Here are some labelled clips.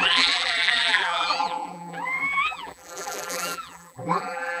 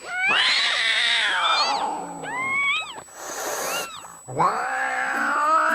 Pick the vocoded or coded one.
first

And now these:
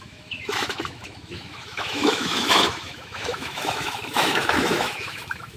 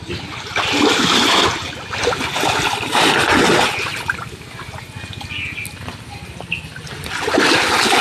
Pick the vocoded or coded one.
first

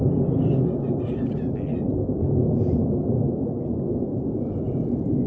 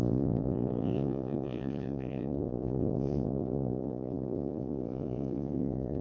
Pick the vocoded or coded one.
second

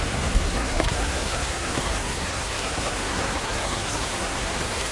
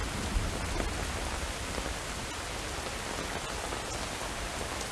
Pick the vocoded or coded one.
first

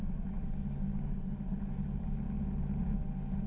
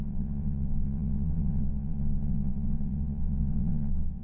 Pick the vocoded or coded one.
second